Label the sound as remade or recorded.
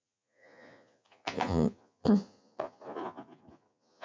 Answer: remade